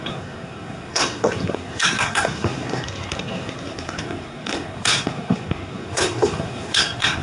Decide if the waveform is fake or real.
fake